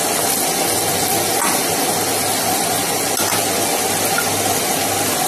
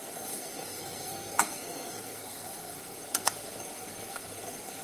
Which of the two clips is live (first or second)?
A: first